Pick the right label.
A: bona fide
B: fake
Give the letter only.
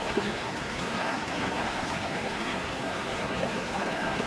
B